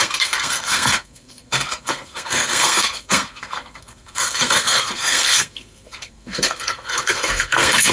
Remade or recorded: remade